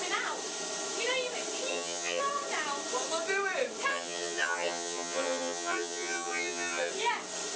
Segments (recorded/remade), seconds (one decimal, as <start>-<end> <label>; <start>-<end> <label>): 0.0-1.7 recorded; 1.7-2.2 remade; 2.2-3.9 recorded; 3.9-6.9 remade; 6.9-7.6 recorded